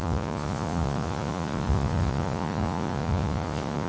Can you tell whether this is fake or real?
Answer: fake